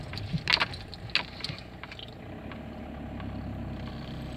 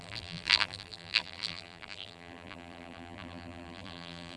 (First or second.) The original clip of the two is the first